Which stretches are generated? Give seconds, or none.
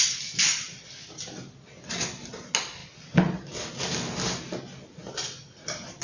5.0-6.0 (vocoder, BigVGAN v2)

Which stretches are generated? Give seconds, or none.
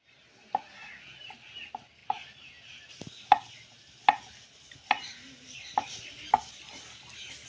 none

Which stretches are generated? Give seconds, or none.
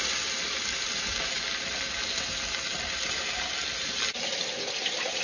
none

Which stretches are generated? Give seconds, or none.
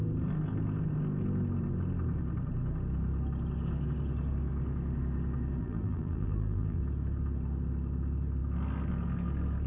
5.6-6.8 (vocoder, BigVGAN v2)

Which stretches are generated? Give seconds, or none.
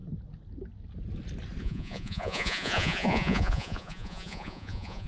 1.6-5.1 (vocoder, Vocos)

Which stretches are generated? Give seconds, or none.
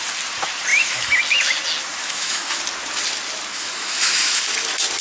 0.7-1.2 (autoencoder, DAC-VAE); 2.0-2.6; 3.5-4.5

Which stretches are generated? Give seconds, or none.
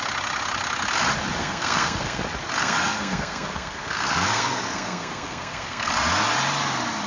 1.4-2.2 (codec, SNAC); 2.6-5.9